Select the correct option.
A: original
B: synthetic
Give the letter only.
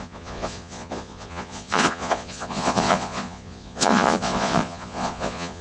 B